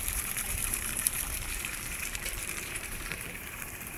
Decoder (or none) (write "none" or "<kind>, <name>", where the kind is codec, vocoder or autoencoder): vocoder, BigVGAN v2